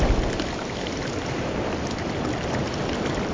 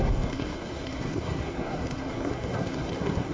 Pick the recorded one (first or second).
first